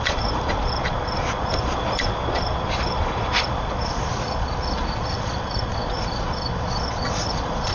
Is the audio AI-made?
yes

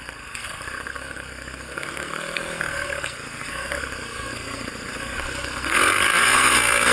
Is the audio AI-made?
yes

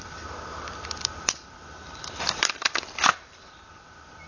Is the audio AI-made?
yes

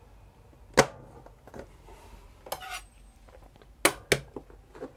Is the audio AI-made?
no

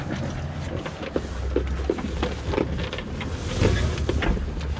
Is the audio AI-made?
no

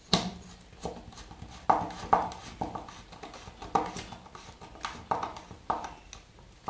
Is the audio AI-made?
no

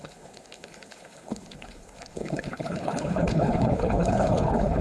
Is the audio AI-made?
yes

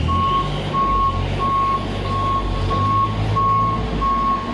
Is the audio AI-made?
no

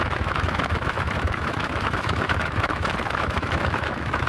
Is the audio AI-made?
yes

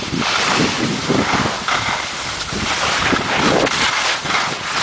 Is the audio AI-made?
no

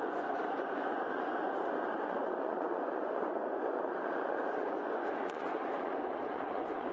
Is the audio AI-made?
yes